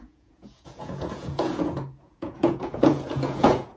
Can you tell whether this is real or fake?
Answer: fake